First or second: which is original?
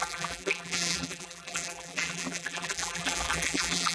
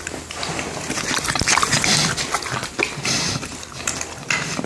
second